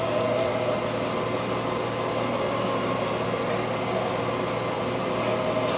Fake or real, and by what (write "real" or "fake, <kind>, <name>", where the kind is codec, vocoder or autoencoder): real